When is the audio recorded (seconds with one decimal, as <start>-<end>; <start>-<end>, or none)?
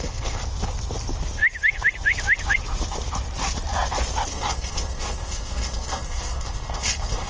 0.4-4.3